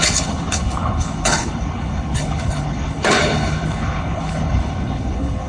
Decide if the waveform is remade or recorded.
remade